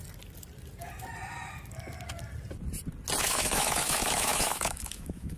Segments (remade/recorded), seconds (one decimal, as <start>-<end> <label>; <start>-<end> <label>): 0.0-3.2 recorded; 3.2-5.4 remade